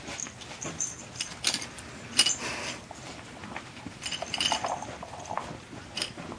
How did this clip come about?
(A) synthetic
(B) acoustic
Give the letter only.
B